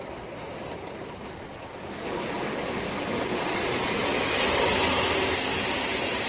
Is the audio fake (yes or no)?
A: no